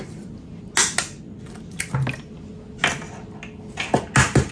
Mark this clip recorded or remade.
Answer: recorded